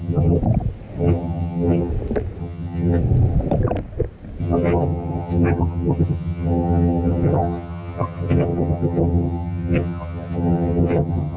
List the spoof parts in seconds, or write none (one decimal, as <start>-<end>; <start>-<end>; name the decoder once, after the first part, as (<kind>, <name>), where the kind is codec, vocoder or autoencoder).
0.0-0.4 (vocoder, HiFi-GAN); 1.0-1.9; 2.4-3.0; 4.4-11.4